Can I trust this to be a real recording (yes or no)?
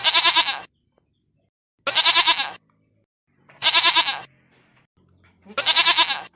yes